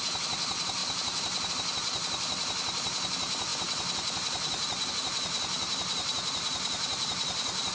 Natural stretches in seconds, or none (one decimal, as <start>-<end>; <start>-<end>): 0.0-7.7